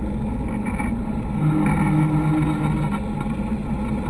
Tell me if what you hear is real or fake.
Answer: real